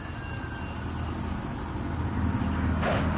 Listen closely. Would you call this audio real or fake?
real